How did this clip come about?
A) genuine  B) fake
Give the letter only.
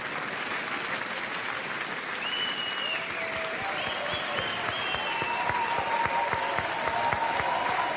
A